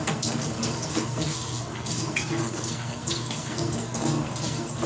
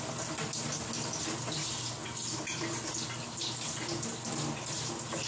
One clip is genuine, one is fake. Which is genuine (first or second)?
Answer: second